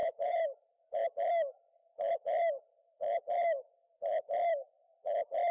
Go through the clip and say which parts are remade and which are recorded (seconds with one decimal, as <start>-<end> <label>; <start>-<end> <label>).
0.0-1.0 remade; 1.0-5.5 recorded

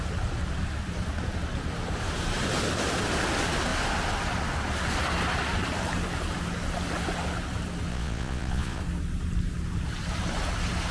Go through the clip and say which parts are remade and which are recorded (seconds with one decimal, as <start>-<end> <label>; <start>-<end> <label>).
0.0-7.9 recorded; 7.9-8.8 remade; 8.8-10.9 recorded

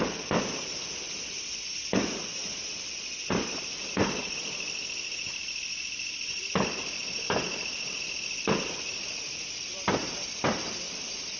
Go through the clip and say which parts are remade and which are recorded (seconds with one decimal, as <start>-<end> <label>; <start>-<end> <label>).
0.0-11.4 recorded